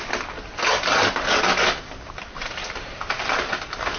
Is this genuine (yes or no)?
yes